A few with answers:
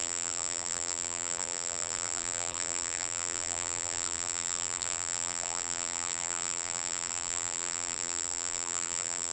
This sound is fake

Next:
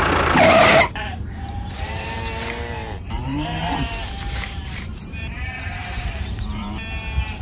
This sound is fake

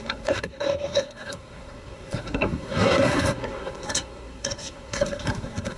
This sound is fake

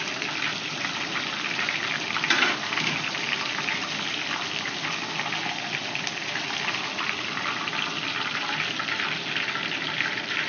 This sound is real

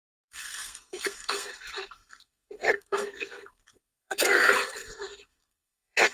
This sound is fake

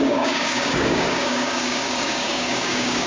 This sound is fake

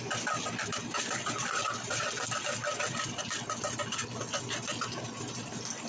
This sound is real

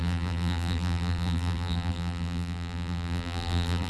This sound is fake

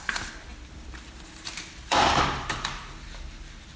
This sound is fake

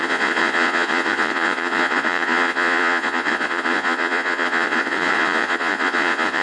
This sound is fake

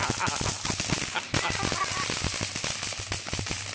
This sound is real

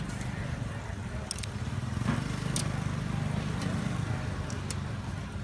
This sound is real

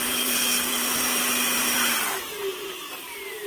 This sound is fake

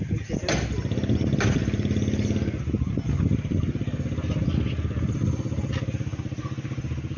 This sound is real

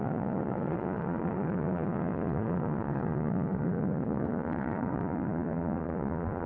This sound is fake